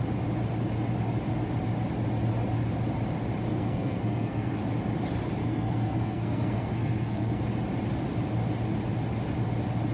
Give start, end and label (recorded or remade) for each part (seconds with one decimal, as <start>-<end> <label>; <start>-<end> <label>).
0.0-3.5 recorded; 3.5-4.6 remade; 4.6-5.4 recorded; 5.4-7.4 remade; 7.4-9.9 recorded